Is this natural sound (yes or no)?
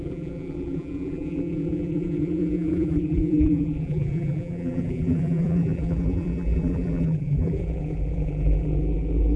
no